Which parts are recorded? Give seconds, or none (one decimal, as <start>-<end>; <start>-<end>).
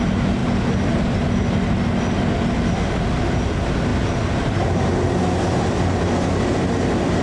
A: 0.0-7.2